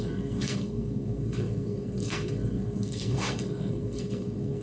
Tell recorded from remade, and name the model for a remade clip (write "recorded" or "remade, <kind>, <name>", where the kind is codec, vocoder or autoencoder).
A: remade, codec, SNAC